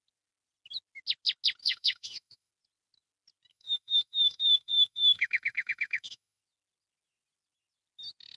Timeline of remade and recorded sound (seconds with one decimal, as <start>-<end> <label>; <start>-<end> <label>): 0.0-1.6 recorded; 1.6-2.5 remade; 2.5-3.5 recorded; 3.5-6.4 remade; 6.4-8.4 recorded